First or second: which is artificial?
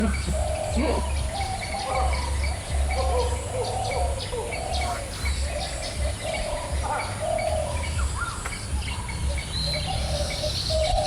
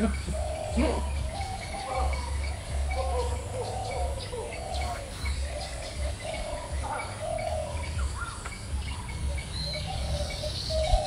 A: second